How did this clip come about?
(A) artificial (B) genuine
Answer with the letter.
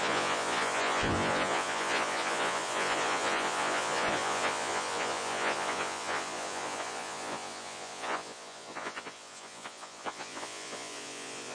A